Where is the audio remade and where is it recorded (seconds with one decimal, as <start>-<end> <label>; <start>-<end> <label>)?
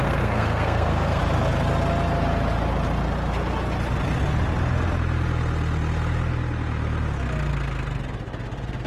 0.0-1.2 remade; 1.2-8.9 recorded